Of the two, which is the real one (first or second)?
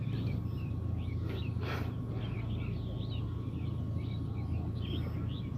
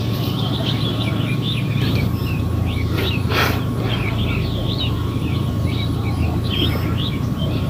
first